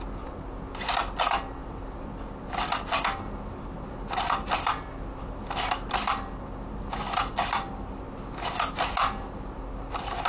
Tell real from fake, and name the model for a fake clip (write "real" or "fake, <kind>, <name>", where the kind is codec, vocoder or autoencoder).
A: real